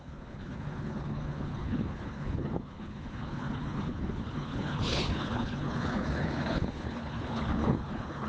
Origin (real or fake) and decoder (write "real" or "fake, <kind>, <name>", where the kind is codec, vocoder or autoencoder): fake, codec, HILCodec